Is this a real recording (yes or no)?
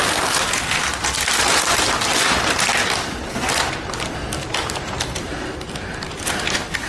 no